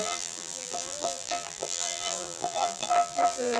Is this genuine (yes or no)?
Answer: no